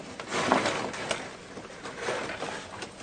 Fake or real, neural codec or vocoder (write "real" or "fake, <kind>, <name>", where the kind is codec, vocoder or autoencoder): real